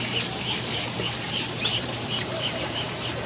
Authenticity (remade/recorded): remade